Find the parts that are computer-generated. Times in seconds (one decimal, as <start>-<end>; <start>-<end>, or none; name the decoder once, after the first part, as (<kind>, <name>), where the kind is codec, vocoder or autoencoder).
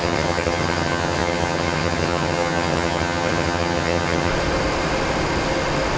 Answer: 0.0-4.3 (vocoder, HiFi-GAN)